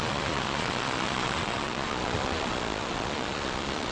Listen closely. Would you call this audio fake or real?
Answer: fake